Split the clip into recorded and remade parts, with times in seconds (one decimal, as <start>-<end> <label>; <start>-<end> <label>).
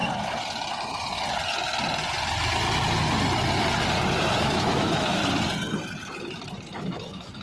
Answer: 0.0-4.4 recorded; 4.4-5.2 remade; 5.2-6.7 recorded; 6.7-7.4 remade